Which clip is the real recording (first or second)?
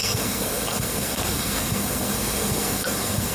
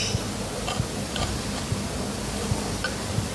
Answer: second